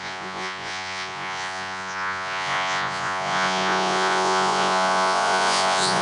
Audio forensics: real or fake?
fake